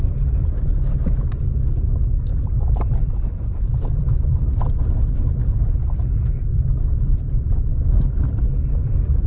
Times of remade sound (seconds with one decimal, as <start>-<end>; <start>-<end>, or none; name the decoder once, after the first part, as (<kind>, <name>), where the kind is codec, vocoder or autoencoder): 0.4-1.0 (vocoder, BigVGAN v2); 2.3-4.6; 6.5-8.2